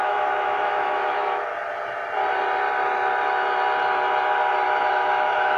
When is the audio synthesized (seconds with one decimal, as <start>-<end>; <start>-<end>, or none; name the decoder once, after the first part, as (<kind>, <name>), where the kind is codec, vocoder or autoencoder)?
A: 0.0-1.5 (autoencoder, DAC-VAE); 4.9-5.6